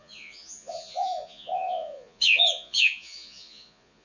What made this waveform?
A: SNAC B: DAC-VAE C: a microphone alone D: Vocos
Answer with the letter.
D